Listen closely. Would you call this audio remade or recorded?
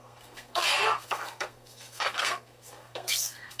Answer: remade